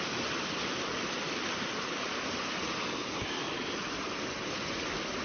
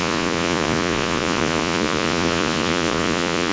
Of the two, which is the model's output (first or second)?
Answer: second